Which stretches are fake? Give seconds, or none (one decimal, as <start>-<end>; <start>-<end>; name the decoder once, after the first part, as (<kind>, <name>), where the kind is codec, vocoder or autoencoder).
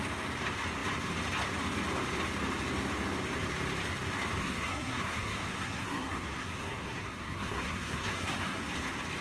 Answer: 4.4-8.6 (codec, SNAC)